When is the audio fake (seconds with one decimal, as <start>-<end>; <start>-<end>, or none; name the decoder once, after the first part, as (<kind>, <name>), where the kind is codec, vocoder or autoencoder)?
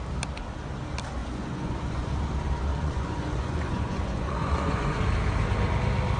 1.2-2.2 (vocoder, Vocos); 2.7-5.0